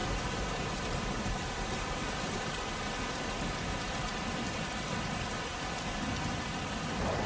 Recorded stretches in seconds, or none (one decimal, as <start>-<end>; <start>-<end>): 0.0-7.3